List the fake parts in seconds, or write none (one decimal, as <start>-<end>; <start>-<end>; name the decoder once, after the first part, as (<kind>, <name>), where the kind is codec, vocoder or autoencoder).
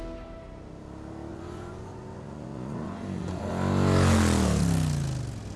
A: 1.3-3.5 (vocoder, Vocos)